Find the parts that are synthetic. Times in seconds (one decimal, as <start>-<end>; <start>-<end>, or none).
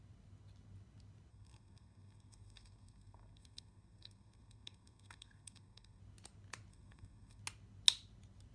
1.3-6.0; 6.7-7.4